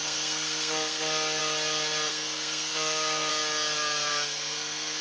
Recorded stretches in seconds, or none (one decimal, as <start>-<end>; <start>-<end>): 1.4-2.1; 3.3-4.1